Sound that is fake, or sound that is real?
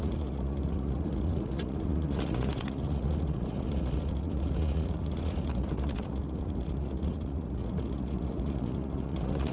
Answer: fake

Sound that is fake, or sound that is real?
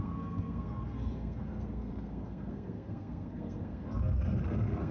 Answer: fake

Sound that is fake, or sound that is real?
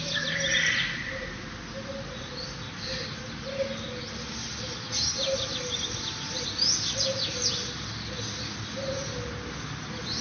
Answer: real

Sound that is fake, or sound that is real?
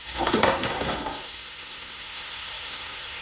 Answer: fake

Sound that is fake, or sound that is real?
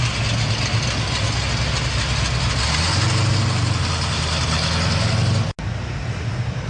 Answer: real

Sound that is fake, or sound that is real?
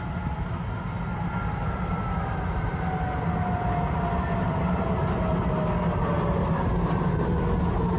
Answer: real